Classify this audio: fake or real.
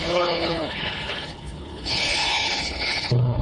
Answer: fake